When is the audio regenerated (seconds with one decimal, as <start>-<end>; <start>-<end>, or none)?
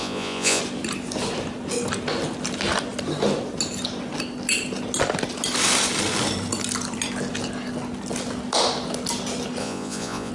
0.0-0.6; 9.6-10.3